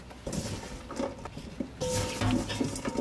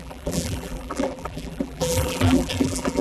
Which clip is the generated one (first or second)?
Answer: second